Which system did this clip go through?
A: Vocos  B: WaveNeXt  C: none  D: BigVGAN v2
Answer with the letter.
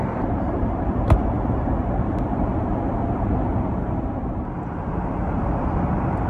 D